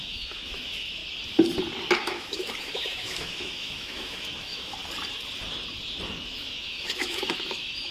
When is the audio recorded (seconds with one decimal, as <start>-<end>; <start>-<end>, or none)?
1.0-2.0; 4.8-6.2